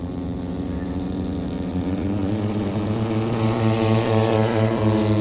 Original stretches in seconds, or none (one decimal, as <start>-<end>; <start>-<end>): 0.0-1.7; 4.8-5.2